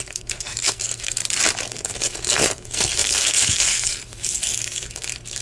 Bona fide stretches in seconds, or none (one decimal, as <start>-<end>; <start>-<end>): 1.2-1.7